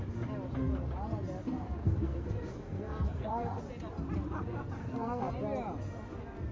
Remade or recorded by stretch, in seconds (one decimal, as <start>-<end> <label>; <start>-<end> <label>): 0.0-1.8 recorded; 1.8-3.6 remade; 3.6-4.8 recorded; 4.8-5.3 remade; 5.3-6.5 recorded

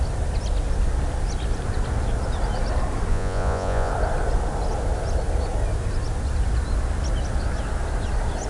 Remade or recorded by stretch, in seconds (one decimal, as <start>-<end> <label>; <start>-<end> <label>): 0.0-3.1 recorded; 3.1-3.9 remade; 3.9-8.5 recorded

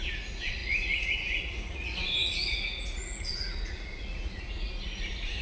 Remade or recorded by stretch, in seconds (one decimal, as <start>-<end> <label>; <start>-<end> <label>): 0.0-5.4 remade

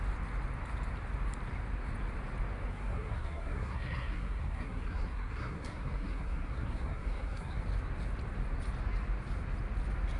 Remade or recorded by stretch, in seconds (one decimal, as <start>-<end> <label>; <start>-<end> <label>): 0.0-2.7 recorded; 2.7-7.6 remade; 7.6-10.2 recorded

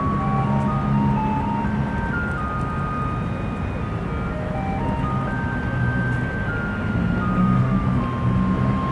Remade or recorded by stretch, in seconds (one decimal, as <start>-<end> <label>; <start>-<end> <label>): 0.0-7.4 recorded; 7.4-8.0 remade; 8.0-8.9 recorded

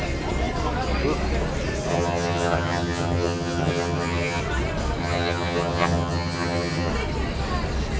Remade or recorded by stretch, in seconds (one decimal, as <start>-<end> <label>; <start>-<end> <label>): 0.0-1.9 recorded; 1.9-4.4 remade; 4.4-5.0 recorded; 5.0-6.9 remade; 6.9-8.0 recorded

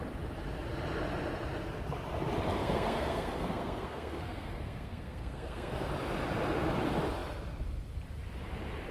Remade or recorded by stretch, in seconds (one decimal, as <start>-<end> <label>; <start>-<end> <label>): 0.0-2.6 recorded; 2.6-5.9 remade; 5.9-8.9 recorded